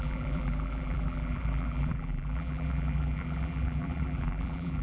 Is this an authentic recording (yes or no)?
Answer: no